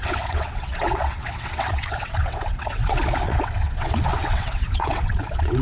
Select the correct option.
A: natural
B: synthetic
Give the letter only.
B